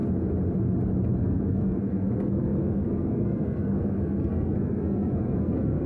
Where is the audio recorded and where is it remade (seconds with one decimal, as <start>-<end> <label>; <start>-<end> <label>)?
0.0-1.2 recorded; 1.2-5.9 remade